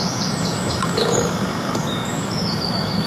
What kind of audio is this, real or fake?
fake